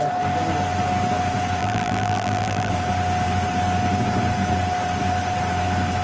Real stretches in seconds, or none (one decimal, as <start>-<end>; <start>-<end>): 0.0-1.6; 2.7-6.0